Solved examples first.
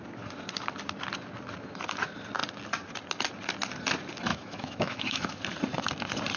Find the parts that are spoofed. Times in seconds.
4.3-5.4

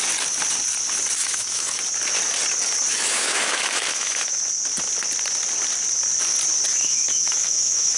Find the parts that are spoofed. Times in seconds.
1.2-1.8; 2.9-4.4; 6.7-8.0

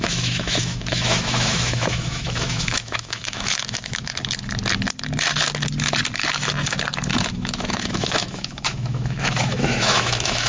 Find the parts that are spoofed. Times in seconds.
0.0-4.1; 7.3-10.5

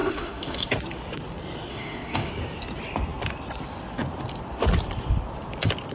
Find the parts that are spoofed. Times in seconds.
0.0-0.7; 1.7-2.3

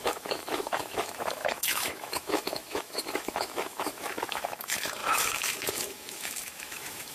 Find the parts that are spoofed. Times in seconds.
0.0-7.1

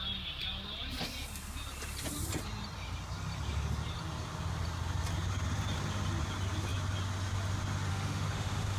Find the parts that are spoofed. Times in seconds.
7.9-8.8

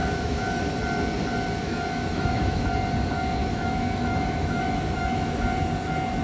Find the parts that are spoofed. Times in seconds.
0.0-0.6; 1.6-2.7; 3.4-5.4

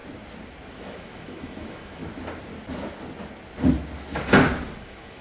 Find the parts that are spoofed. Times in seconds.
0.7-2.0; 4.8-5.2